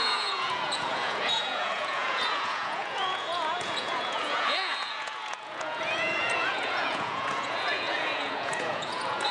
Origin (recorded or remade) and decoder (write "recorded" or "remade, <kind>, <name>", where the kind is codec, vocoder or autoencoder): remade, vocoder, Vocos